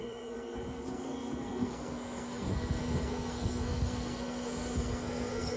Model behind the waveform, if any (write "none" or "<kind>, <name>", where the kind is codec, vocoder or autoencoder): codec, SNAC